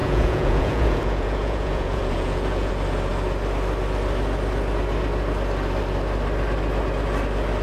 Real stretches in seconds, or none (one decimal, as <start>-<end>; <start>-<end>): 2.7-7.6